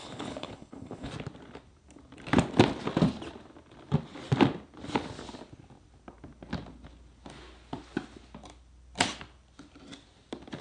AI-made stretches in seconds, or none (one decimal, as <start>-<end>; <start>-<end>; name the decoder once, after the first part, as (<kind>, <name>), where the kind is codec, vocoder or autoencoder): 0.0-1.1 (codec, HILCodec)